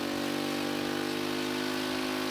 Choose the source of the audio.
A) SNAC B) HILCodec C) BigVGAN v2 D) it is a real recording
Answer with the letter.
D